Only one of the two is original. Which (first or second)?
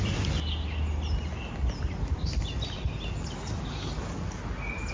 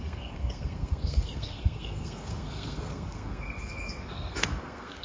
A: first